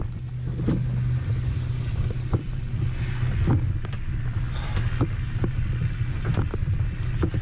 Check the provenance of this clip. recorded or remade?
recorded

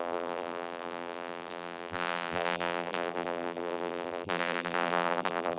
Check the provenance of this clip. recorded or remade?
remade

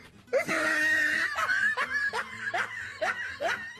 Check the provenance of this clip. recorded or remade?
recorded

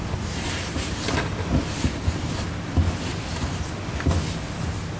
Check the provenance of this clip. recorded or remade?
recorded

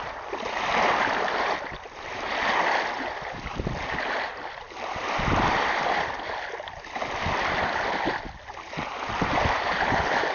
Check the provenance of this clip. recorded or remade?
recorded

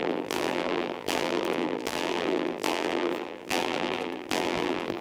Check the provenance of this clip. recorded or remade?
remade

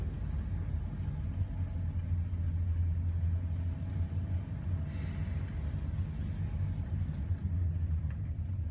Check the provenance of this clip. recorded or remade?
recorded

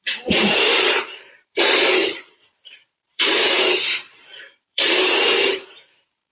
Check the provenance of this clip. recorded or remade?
remade